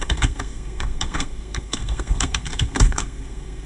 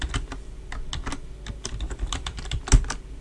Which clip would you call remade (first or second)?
first